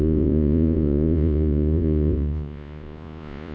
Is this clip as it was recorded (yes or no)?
no